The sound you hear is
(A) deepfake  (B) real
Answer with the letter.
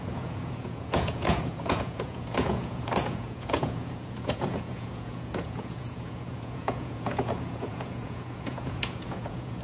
A